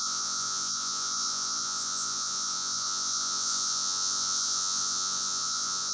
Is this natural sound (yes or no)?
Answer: no